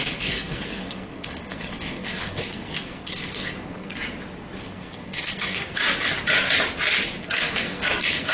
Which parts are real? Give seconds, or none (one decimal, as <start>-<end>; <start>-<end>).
3.9-4.6; 5.8-7.2